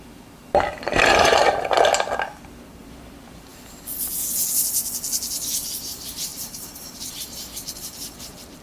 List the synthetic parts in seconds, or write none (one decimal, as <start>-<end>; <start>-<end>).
0.0-1.4; 2.8-3.5; 5.8-8.6

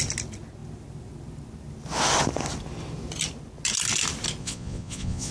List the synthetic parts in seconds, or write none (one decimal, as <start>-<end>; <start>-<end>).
4.4-5.3

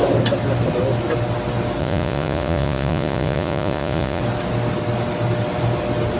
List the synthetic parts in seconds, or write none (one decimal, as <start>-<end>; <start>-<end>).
1.8-4.2

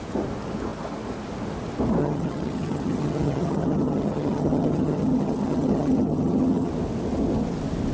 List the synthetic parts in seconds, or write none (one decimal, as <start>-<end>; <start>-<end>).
2.0-6.7

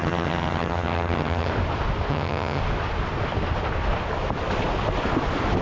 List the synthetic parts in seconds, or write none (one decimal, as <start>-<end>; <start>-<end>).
0.0-1.5; 2.1-2.6

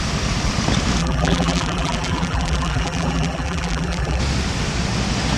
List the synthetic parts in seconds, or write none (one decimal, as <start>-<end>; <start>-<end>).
1.0-4.2

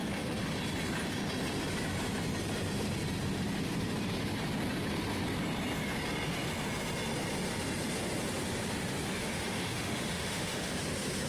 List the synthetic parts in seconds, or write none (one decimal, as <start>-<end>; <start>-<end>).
9.2-10.7

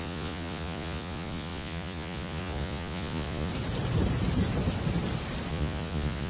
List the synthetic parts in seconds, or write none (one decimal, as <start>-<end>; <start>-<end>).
0.0-3.5; 5.5-6.3